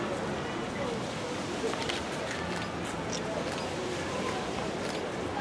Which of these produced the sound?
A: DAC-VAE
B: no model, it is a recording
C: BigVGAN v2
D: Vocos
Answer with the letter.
B